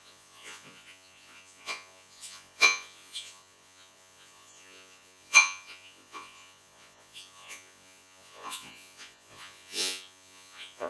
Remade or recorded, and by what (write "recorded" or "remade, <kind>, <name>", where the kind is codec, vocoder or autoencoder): remade, vocoder, Vocos